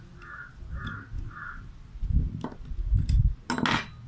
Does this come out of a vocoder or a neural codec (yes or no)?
no